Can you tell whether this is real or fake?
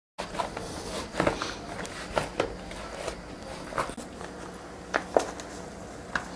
real